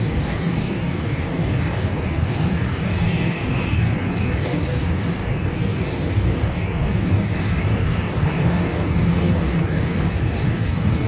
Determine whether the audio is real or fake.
fake